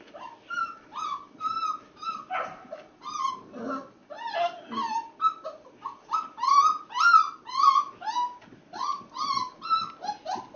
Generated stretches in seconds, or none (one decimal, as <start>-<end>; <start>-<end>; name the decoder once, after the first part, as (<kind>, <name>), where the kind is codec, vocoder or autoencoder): none